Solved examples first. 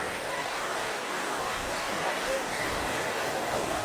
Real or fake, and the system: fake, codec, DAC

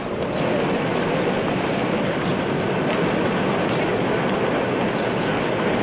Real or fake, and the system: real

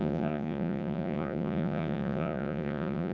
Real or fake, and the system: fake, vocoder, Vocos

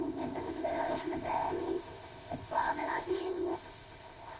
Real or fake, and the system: fake, codec, ZipCodec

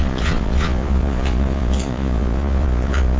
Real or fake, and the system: fake, vocoder, Vocos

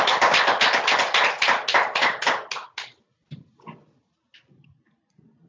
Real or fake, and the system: real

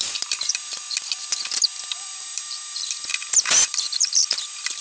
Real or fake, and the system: fake, vocoder, BigVGAN v2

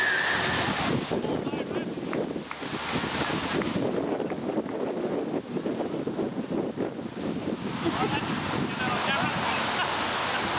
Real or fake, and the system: real